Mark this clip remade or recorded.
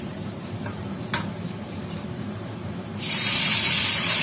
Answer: remade